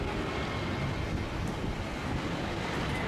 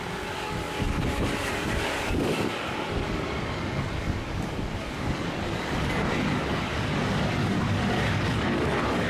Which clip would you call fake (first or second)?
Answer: second